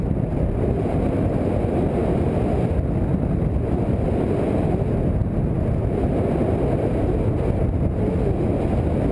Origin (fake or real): real